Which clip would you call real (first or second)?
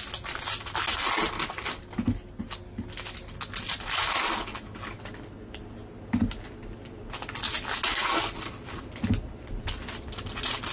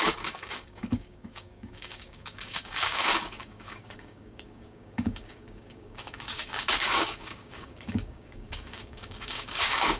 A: first